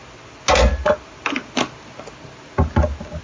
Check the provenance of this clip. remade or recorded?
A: recorded